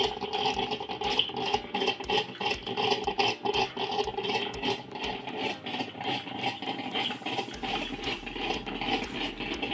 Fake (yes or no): no